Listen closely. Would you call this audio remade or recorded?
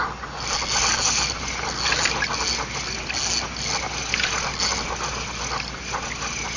recorded